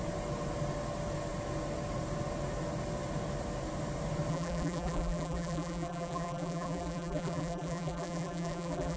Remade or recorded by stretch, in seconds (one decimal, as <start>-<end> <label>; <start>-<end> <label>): 0.0-4.3 recorded; 4.3-9.0 remade